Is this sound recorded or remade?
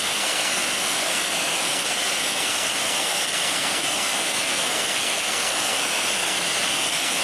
remade